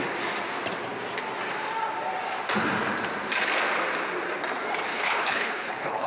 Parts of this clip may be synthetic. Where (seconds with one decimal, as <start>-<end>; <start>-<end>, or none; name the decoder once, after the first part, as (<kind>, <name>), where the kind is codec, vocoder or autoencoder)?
4.9-6.1 (codec, HILCodec)